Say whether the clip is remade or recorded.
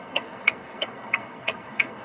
remade